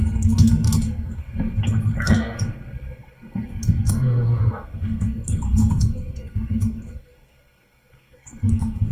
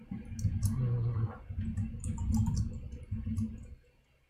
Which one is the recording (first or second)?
second